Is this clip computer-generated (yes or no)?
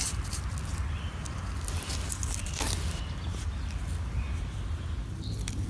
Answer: no